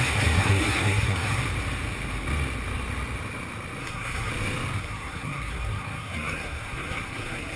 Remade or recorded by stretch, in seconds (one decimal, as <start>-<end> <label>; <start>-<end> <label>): 0.0-1.4 remade; 1.4-3.8 recorded; 3.8-4.3 remade; 4.3-4.8 recorded; 4.8-7.6 remade